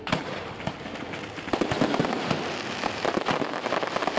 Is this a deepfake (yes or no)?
no